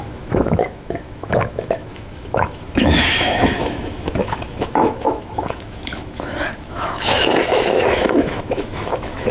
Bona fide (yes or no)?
no